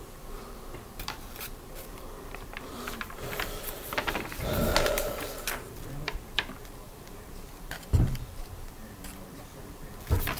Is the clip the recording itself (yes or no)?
no